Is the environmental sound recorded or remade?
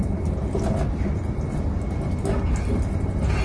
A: recorded